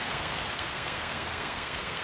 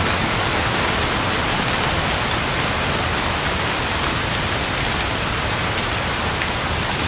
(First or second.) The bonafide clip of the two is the second